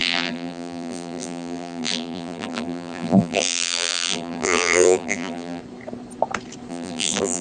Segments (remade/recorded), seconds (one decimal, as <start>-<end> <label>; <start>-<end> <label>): 0.0-5.6 remade; 5.6-6.7 recorded; 6.7-7.4 remade